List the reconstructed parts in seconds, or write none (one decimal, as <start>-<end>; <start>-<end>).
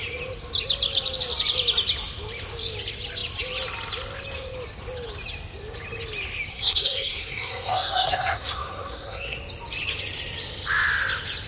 6.5-9.4